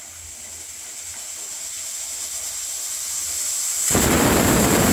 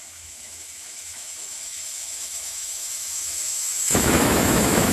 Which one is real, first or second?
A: first